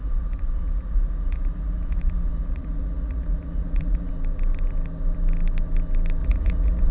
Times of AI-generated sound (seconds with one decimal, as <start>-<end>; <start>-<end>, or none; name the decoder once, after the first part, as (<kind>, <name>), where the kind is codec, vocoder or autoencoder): 0.0-4.1 (vocoder, Vocos); 6.2-6.9